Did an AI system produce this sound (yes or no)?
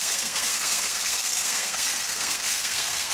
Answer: yes